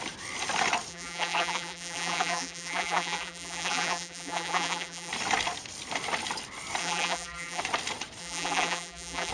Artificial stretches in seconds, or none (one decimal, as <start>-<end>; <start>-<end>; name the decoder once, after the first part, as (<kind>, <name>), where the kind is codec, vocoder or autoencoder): 0.9-5.1 (vocoder, BigVGAN v2); 6.8-7.6; 8.2-9.3